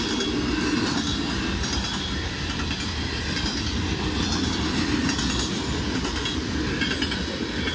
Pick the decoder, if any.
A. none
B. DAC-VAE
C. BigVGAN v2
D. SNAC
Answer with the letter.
A